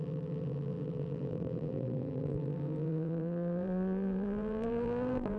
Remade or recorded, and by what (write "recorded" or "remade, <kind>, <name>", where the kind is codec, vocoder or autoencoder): remade, vocoder, BigVGAN v2